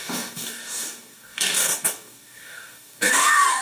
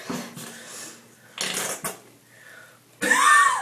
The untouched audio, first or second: second